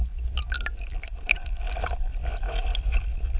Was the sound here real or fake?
real